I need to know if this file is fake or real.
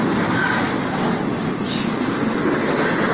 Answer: real